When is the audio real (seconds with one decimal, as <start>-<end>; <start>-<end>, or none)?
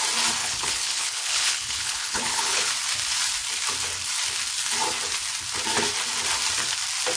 0.0-0.4; 2.7-7.2